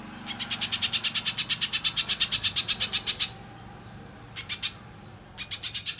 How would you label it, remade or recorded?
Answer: recorded